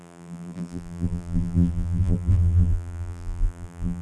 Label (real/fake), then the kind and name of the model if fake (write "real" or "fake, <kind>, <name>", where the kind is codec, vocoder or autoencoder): fake, vocoder, BigVGAN v2